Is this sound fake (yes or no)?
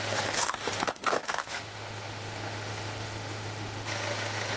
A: yes